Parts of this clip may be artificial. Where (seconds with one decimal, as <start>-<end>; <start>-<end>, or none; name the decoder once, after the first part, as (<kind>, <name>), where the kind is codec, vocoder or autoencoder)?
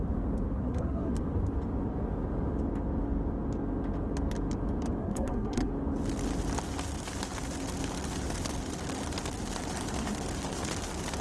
0.6-1.1 (codec, SNAC); 5.0-5.7